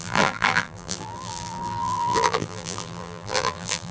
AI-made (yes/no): yes